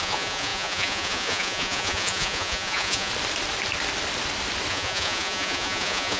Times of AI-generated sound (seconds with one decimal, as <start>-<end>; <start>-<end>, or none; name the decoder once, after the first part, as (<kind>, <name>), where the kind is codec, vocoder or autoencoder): 0.0-3.1 (vocoder, Vocos); 4.7-6.2